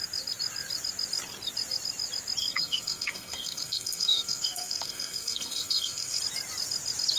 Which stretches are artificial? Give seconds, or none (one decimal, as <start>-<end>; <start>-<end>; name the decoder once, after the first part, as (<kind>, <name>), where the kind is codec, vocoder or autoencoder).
2.4-6.2 (codec, SNAC)